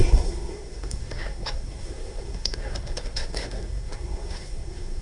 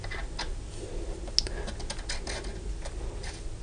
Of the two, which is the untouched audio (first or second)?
second